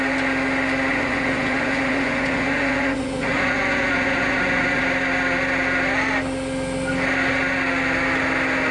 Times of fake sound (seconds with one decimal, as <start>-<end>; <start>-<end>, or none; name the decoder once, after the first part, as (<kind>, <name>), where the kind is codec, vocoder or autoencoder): 0.9-4.8 (vocoder, Vocos)